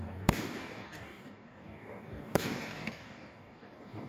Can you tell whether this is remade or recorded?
remade